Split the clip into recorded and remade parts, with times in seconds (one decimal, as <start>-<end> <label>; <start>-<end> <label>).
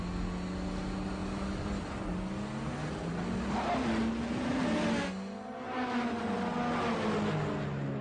0.0-8.0 recorded